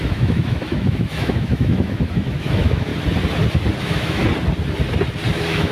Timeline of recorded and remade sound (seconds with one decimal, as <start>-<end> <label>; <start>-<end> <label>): 0.0-2.9 remade; 2.9-3.8 recorded; 3.8-4.2 remade; 4.2-5.3 recorded; 5.3-5.7 remade